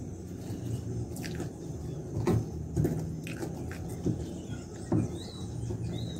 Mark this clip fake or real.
real